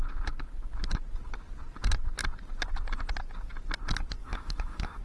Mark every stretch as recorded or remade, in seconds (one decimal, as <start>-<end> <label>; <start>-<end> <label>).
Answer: 0.0-4.2 recorded; 4.2-5.0 remade